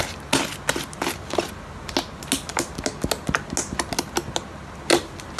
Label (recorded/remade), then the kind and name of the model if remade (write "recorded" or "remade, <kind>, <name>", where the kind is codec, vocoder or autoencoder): recorded